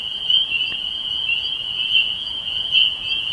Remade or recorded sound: remade